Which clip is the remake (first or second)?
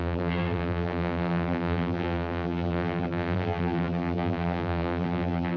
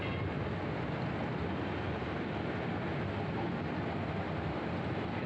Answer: first